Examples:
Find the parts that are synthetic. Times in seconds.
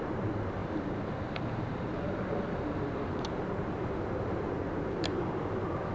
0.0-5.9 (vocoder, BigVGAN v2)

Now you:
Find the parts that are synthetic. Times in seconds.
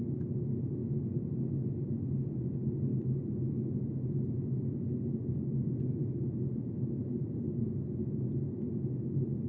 none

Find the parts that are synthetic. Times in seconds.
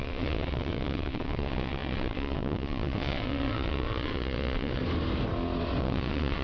0.0-4.8 (vocoder, WaveNeXt); 5.8-6.4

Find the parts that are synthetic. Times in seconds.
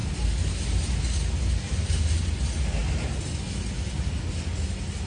none